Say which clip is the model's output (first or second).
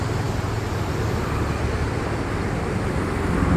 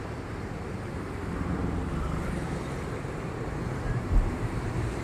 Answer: second